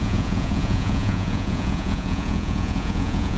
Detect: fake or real fake